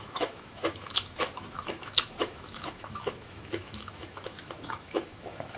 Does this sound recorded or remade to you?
remade